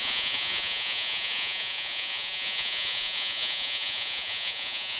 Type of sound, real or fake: fake